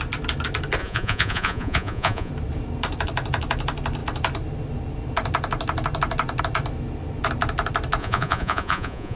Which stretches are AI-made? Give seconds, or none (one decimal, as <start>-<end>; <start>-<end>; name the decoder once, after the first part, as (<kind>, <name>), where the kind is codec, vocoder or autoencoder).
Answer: 0.8-2.3 (vocoder, Vocos); 8.0-9.2

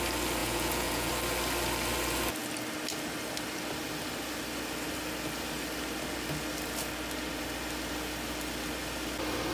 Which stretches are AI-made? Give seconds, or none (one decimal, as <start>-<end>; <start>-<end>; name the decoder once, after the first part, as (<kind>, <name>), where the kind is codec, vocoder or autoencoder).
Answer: 0.4-1.1 (vocoder, Vocos)

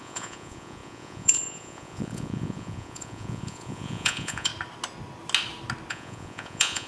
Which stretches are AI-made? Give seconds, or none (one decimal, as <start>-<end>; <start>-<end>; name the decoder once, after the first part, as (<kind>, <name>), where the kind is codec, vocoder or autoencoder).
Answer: 0.0-4.5 (vocoder, Vocos); 5.9-6.9

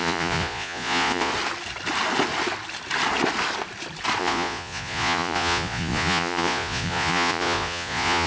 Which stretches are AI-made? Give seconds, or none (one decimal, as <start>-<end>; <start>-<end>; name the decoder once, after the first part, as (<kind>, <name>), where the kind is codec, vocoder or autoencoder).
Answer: 0.0-1.3 (vocoder, Vocos); 4.2-8.3